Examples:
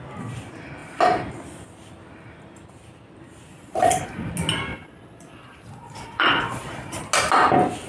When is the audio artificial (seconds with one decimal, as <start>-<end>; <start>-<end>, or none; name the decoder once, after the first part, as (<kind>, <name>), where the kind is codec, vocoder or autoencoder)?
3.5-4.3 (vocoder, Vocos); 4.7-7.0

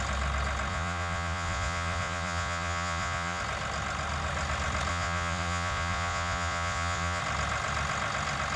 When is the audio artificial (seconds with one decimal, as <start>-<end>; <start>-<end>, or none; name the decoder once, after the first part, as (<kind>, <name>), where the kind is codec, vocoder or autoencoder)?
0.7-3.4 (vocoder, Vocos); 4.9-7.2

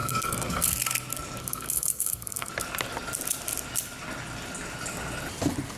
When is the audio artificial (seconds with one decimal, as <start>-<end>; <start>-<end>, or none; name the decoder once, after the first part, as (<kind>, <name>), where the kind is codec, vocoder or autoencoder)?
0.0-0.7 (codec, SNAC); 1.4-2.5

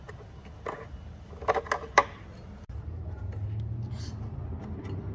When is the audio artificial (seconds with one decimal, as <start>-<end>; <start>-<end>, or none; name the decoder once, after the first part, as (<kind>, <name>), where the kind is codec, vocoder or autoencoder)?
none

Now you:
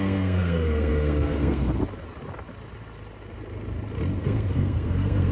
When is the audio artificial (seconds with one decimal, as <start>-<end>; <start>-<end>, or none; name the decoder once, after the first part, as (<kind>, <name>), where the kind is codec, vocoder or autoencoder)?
0.0-1.8 (codec, SNAC); 4.2-5.3

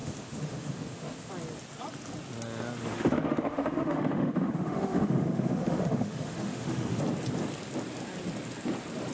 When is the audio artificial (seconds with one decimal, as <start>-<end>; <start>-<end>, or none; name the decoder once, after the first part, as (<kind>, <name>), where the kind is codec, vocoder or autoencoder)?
0.0-1.3 (autoencoder, DAC-VAE); 2.8-7.0